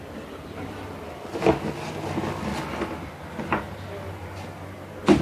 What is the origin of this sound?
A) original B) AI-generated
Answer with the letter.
A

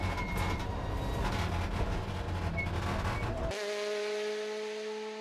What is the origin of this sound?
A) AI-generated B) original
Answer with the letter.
B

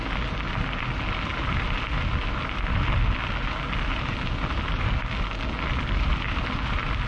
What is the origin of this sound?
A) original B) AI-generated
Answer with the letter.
A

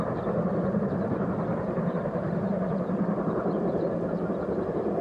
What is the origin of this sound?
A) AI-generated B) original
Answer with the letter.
A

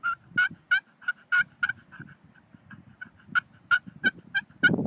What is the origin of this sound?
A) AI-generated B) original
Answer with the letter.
B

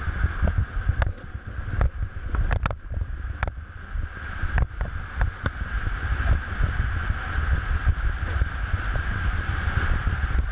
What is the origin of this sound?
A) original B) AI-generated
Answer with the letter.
A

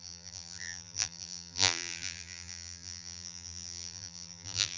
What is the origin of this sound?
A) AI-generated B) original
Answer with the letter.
A